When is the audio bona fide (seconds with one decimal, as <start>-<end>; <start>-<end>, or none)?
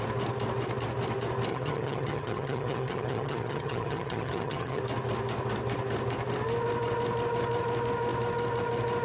0.0-1.5; 4.8-9.0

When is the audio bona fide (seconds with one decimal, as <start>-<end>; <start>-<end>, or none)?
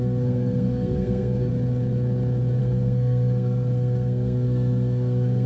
1.5-2.6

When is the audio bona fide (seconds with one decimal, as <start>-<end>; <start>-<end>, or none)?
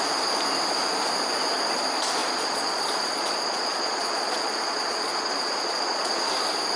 0.0-2.2; 6.3-6.8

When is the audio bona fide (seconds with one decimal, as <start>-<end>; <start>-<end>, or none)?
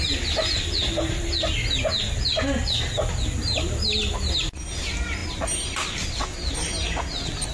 0.0-7.5